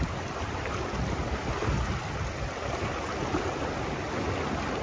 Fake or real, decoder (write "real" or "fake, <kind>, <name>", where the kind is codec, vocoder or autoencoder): real